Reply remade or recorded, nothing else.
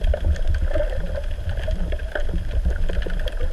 recorded